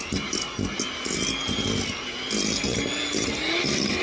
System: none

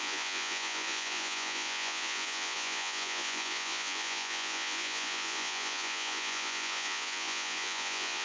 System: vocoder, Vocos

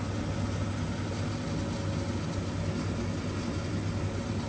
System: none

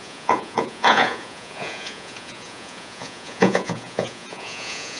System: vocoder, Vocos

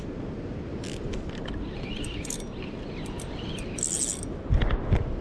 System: none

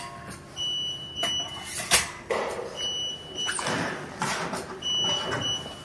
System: none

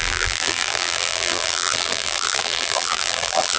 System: vocoder, BigVGAN v2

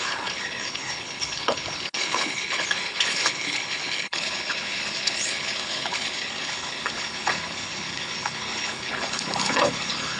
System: codec, HILCodec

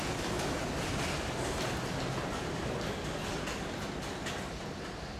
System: none